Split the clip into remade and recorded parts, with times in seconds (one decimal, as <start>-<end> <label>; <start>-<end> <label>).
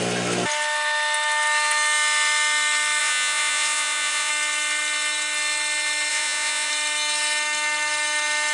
0.0-3.0 recorded; 3.0-4.3 remade; 4.3-6.1 recorded; 6.1-6.7 remade; 6.7-8.5 recorded